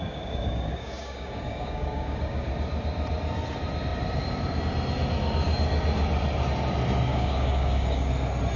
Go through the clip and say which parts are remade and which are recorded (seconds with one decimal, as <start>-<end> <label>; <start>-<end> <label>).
0.0-2.5 remade; 2.5-7.1 recorded; 7.1-8.1 remade; 8.1-8.6 recorded